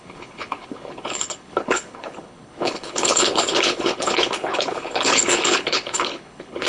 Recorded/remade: remade